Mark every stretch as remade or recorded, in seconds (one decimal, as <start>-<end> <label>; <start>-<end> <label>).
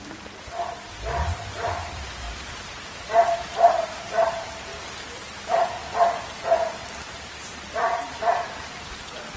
0.0-4.7 remade; 4.7-7.6 recorded; 7.6-9.4 remade